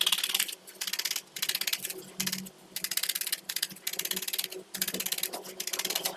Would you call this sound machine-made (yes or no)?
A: no